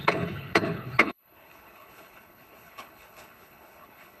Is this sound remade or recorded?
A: remade